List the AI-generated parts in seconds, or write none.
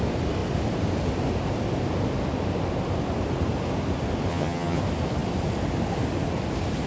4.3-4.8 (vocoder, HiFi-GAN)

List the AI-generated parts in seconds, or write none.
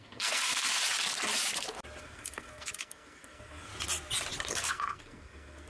0.0-0.8 (codec, SNAC); 2.0-3.7; 4.5-5.7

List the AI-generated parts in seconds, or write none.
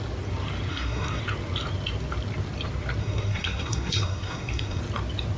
0.7-1.2 (codec, SNAC); 3.0-4.8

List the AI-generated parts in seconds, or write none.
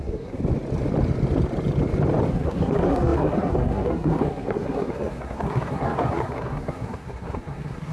0.0-0.4 (codec, SNAC); 2.3-7.9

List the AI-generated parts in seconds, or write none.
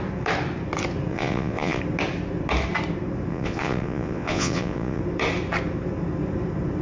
1.1-1.8 (vocoder, Vocos); 3.3-5.0